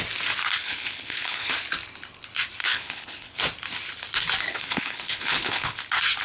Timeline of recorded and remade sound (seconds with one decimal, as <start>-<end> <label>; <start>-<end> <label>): 0.0-0.6 recorded; 0.6-1.5 remade; 1.5-2.6 recorded; 2.6-3.4 remade; 3.4-4.5 recorded; 4.5-5.8 remade; 5.8-6.2 recorded

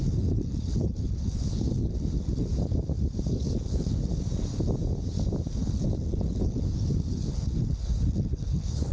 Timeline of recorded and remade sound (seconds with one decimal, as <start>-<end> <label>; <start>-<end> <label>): 0.0-2.5 remade; 2.5-3.3 recorded; 3.3-4.1 remade; 4.1-5.6 recorded; 5.6-8.9 remade

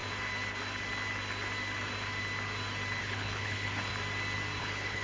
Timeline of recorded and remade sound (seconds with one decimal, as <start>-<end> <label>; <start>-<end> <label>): 0.0-3.0 recorded; 3.0-3.9 remade; 3.9-4.6 recorded; 4.6-5.0 remade

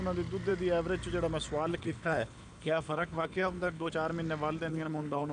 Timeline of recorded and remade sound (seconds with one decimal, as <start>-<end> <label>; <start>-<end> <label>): 0.0-1.7 recorded; 1.7-3.9 remade; 3.9-4.7 recorded; 4.7-5.3 remade

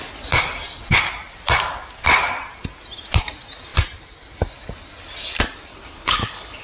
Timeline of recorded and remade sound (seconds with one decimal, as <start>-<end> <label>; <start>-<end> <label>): 0.0-5.7 recorded; 5.7-6.6 remade

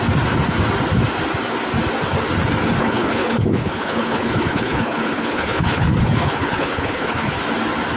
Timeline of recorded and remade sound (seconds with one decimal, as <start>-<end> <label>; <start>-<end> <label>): 0.0-2.8 recorded; 2.8-7.3 remade; 7.3-8.0 recorded